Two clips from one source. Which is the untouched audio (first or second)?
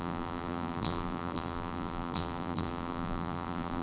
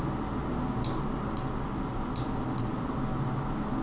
second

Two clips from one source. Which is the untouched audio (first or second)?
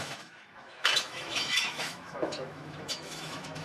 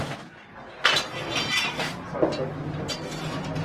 second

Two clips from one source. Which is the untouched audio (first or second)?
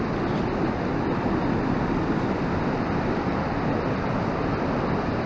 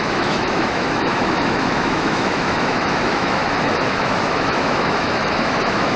first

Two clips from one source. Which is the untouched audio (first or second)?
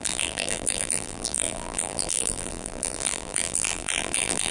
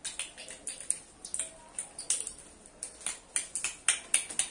second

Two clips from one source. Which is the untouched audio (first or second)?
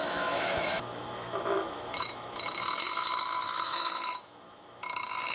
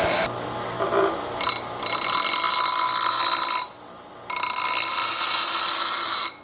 second